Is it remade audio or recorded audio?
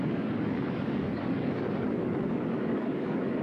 remade